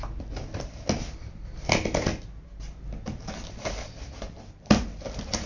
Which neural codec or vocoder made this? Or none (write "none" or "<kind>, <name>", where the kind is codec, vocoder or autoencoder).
none